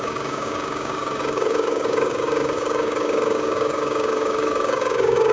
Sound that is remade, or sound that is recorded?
remade